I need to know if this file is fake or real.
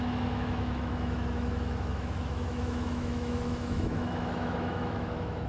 fake